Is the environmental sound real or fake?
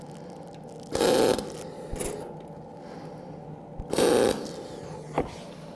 real